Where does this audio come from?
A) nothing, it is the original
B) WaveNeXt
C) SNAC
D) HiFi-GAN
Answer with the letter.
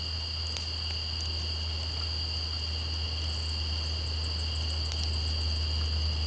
A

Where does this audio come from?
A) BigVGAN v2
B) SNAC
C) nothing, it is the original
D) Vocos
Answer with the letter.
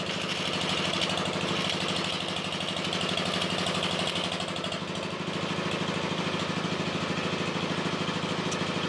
C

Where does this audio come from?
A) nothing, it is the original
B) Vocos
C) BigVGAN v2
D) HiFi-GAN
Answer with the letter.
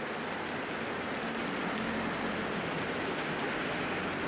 A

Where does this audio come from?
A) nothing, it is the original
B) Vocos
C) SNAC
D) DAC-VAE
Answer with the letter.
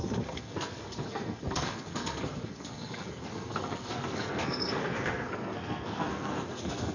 C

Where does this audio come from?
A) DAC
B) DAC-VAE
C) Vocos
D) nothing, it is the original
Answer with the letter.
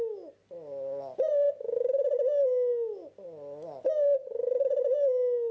D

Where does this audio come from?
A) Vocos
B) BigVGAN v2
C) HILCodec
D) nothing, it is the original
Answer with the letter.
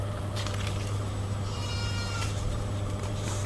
B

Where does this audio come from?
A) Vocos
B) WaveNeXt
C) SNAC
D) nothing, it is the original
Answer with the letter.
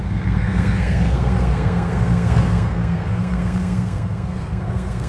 C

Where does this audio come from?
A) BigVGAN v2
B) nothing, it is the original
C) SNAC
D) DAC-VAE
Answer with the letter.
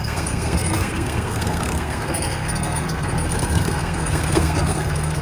C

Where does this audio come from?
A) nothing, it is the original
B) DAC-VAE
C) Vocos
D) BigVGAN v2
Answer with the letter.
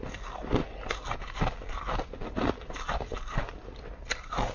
A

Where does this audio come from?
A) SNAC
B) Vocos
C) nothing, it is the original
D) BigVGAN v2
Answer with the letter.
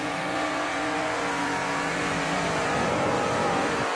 B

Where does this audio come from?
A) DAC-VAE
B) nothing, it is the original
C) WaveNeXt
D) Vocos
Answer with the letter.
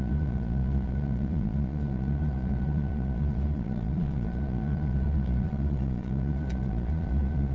D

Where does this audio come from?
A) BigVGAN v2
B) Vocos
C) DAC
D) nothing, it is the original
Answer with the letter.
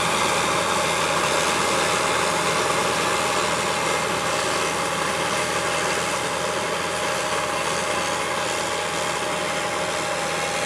D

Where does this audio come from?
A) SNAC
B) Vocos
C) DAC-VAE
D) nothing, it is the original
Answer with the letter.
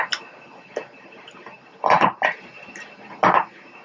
D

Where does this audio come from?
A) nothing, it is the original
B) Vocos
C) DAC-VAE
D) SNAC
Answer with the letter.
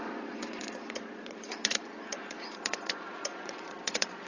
B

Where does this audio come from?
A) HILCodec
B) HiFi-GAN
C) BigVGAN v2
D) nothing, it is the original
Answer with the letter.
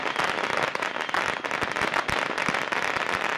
D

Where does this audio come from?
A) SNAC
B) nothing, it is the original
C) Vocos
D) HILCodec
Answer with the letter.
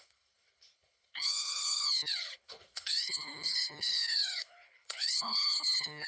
D